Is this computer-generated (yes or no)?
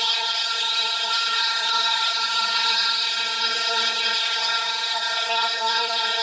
yes